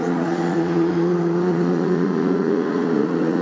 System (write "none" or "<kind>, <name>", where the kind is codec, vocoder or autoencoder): vocoder, Vocos